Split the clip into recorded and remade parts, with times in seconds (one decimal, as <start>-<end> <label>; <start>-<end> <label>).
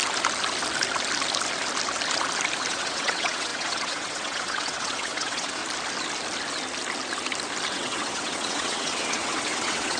0.0-2.7 recorded; 2.7-5.6 remade; 5.6-7.7 recorded; 7.7-10.0 remade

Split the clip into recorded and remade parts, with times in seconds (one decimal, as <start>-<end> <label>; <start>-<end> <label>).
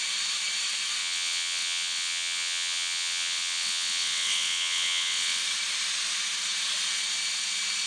0.0-1.0 recorded; 1.0-5.4 remade; 5.4-7.9 recorded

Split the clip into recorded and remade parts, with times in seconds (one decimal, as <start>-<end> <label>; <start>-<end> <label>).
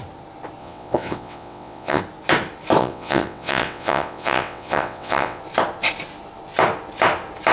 0.0-0.6 recorded; 0.6-2.0 remade; 2.0-2.8 recorded; 2.8-5.4 remade; 5.4-7.5 recorded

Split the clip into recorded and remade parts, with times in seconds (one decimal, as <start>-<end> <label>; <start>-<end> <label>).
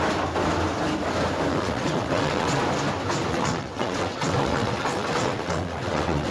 0.0-1.5 recorded; 1.5-2.6 remade; 2.6-3.3 recorded; 3.3-6.3 remade